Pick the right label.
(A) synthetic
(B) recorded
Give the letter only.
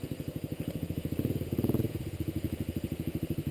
A